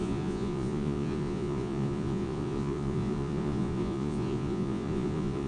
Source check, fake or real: fake